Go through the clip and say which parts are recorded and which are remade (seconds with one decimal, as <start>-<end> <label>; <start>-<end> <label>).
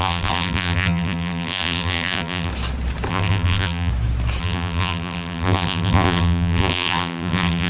0.0-2.5 remade; 2.5-3.1 recorded; 3.1-3.9 remade; 3.9-4.4 recorded; 4.4-7.7 remade